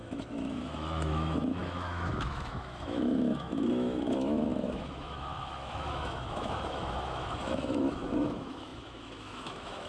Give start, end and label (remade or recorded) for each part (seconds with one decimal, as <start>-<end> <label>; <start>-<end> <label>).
0.0-9.9 remade